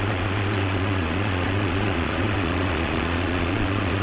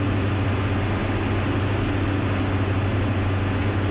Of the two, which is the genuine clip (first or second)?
second